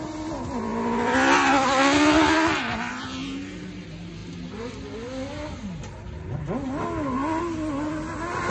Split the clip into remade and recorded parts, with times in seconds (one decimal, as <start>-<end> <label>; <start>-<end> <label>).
0.0-8.5 recorded